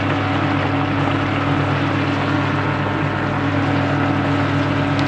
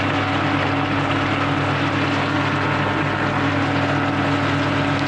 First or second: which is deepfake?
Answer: second